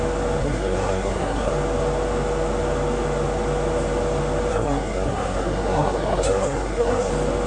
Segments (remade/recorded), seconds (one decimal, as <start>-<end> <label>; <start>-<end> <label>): 0.0-0.4 recorded; 0.4-1.5 remade; 1.5-4.5 recorded; 4.5-7.1 remade; 7.1-7.5 recorded